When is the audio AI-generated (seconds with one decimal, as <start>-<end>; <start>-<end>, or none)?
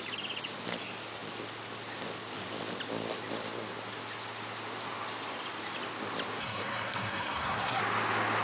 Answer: 6.4-7.8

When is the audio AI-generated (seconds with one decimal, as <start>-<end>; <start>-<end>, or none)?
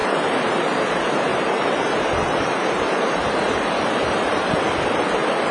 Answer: 0.0-0.6; 1.3-4.6